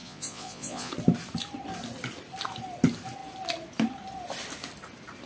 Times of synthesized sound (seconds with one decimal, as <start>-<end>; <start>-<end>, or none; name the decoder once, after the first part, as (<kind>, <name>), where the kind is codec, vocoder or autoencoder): 0.0-0.9 (vocoder, Vocos)